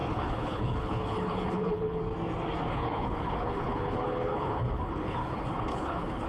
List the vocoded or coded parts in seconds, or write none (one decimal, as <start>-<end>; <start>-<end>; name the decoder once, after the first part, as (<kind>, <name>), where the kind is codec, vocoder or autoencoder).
0.0-2.0 (codec, HILCodec); 2.7-6.3